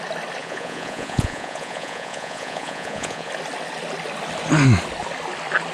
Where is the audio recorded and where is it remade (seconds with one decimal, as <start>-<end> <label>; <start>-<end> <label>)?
0.0-0.4 recorded; 0.4-3.3 remade; 3.3-5.7 recorded